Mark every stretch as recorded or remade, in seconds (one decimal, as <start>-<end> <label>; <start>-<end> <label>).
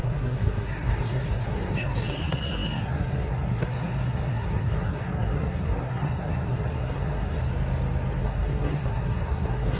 0.0-7.5 remade; 7.5-8.2 recorded; 8.2-9.8 remade